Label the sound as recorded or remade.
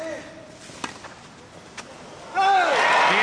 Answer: recorded